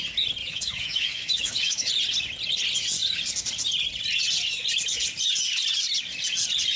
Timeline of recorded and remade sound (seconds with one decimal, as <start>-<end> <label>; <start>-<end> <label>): 0.0-0.4 recorded; 0.4-1.9 remade; 1.9-6.8 recorded